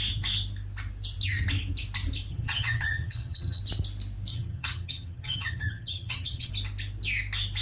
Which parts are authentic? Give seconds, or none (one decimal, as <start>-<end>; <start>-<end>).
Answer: 0.0-2.3; 3.6-4.3; 6.5-7.6